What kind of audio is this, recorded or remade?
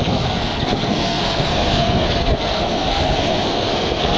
remade